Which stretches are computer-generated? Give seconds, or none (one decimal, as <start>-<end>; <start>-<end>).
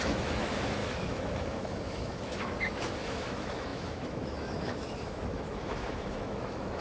0.0-6.8